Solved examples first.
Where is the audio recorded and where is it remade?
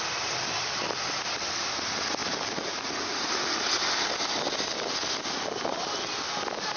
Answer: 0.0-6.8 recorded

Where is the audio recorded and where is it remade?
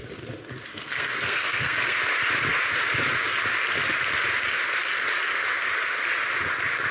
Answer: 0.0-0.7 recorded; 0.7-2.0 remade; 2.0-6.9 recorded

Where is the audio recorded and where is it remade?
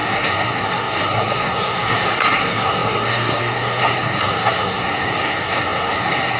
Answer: 0.0-6.4 remade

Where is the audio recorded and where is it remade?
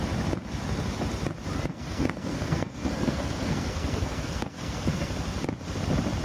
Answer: 0.0-1.7 recorded; 1.7-5.1 remade; 5.1-6.2 recorded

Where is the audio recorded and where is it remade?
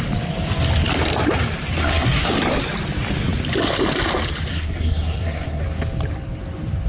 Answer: 0.0-1.8 recorded; 1.8-2.3 remade; 2.3-4.5 recorded; 4.5-5.6 remade; 5.6-6.9 recorded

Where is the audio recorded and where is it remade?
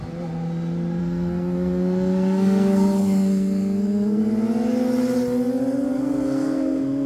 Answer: 0.0-1.0 recorded; 1.0-4.2 remade; 4.2-5.9 recorded; 5.9-7.1 remade